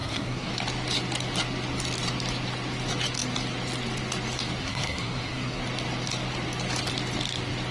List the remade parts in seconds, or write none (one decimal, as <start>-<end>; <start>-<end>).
0.0-0.5; 4.6-5.6